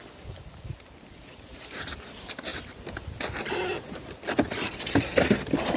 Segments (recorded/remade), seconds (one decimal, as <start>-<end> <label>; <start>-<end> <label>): 0.0-5.8 recorded